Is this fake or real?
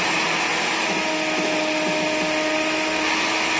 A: real